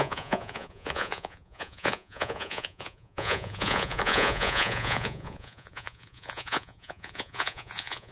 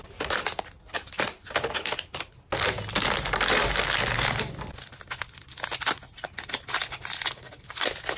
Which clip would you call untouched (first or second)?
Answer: second